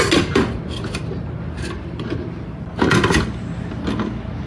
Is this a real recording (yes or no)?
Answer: yes